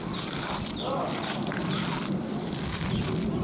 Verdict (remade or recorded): remade